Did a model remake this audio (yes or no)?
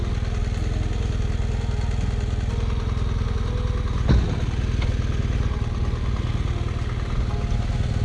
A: no